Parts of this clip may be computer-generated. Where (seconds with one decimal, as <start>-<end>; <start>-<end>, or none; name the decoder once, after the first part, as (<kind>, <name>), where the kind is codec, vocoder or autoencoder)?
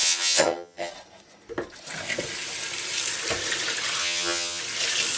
0.0-0.9 (vocoder, HiFi-GAN); 4.0-4.6